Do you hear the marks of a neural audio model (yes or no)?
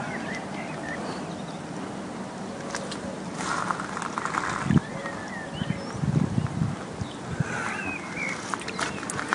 no